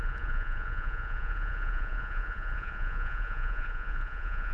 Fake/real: fake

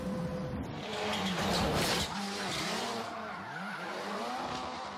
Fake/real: real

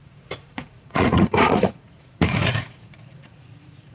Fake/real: fake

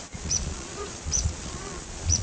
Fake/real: fake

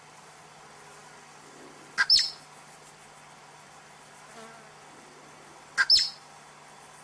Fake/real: real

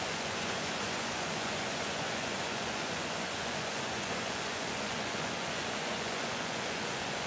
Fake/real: fake